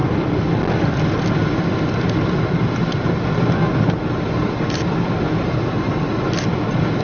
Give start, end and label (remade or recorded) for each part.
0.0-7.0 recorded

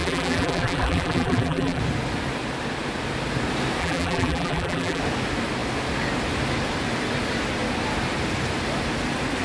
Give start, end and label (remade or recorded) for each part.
0.0-1.8 remade; 1.8-3.8 recorded; 3.8-5.0 remade; 5.0-9.4 recorded

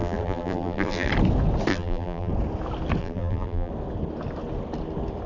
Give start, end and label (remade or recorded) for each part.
0.0-1.1 remade; 1.1-1.7 recorded; 1.7-2.3 remade; 2.3-3.0 recorded; 3.0-3.7 remade; 3.7-5.3 recorded

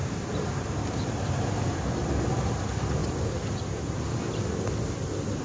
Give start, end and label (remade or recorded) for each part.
0.0-1.8 remade; 1.8-3.0 recorded; 3.0-3.9 remade; 3.9-5.4 recorded

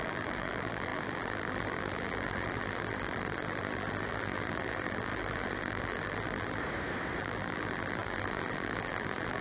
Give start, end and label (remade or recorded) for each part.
0.0-6.6 remade; 6.6-7.2 recorded; 7.2-9.4 remade

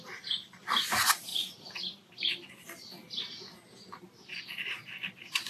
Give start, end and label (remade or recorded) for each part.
0.0-1.3 recorded; 1.3-2.5 remade; 2.5-5.5 recorded

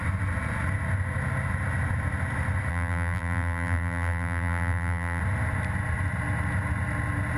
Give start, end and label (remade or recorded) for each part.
0.0-2.7 recorded; 2.7-5.2 remade; 5.2-7.4 recorded